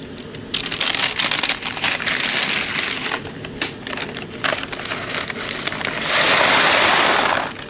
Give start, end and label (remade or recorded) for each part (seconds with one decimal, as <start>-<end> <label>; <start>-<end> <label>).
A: 0.0-7.7 recorded